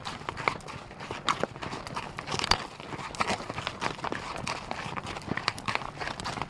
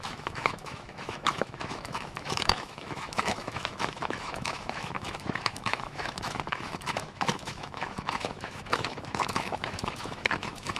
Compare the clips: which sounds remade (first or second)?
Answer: second